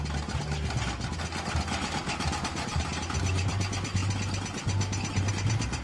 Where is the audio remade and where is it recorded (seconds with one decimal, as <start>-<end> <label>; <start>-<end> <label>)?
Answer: 0.0-5.8 recorded